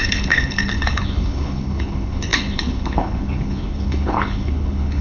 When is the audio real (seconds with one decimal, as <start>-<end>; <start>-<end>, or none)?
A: none